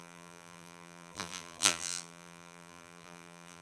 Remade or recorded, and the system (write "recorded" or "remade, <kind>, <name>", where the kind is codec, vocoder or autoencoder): remade, vocoder, BigVGAN v2